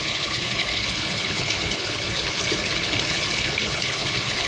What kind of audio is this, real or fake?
fake